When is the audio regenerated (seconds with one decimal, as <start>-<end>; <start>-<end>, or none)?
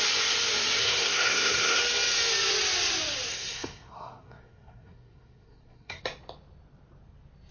0.8-1.8; 3.3-6.0